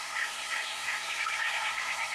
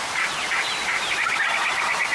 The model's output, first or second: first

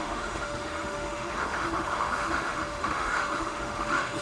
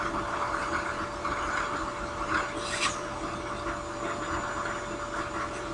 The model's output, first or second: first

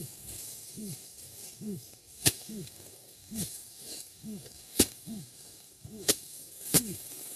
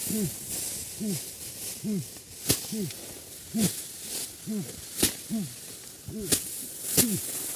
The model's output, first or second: first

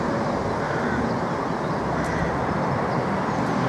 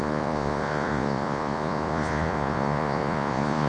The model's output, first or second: second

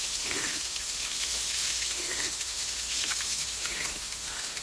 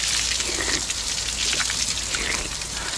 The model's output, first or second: first